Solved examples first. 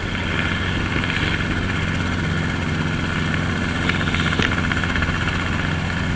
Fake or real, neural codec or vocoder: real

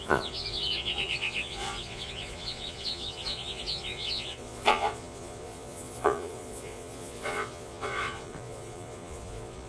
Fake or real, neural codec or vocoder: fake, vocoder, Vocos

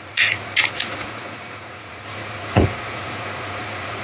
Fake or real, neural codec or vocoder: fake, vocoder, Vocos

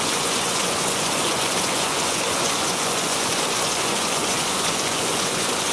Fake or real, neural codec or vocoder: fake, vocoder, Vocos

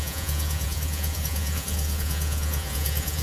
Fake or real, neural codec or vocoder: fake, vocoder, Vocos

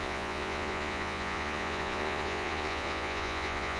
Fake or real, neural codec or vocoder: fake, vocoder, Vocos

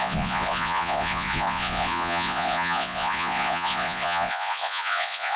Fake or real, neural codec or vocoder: fake, vocoder, Vocos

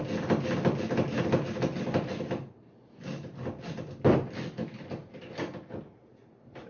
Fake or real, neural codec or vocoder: real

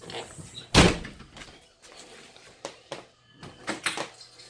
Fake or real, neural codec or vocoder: real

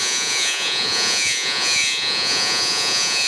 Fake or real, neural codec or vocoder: fake, vocoder, Vocos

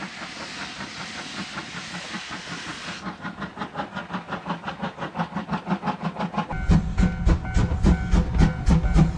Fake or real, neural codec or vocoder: real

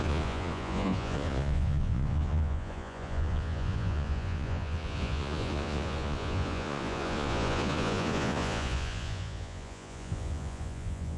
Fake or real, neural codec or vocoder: fake, vocoder, Vocos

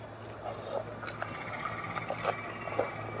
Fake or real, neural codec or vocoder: real